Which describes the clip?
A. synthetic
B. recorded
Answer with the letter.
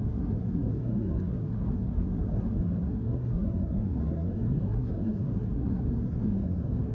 A